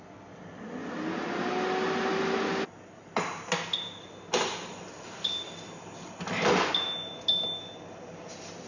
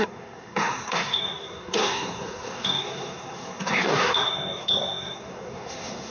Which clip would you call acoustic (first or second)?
first